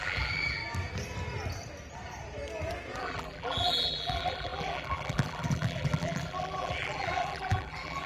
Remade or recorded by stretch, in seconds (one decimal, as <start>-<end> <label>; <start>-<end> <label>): 0.0-0.6 remade; 0.6-3.0 recorded; 3.0-8.1 remade